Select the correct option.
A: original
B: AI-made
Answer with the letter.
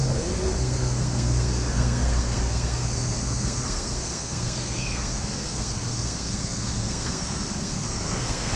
B